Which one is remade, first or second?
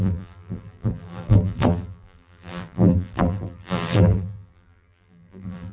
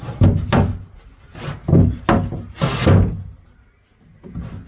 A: first